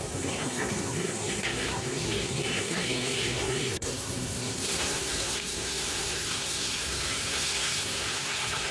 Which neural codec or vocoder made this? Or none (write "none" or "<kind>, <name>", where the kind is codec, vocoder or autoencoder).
codec, SNAC